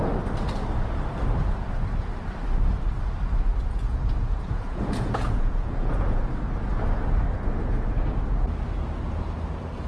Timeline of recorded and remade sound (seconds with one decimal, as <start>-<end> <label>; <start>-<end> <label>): 0.0-3.5 recorded; 3.5-6.2 remade; 6.2-9.9 recorded